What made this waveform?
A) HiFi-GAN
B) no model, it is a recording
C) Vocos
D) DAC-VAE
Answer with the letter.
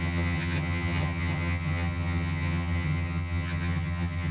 A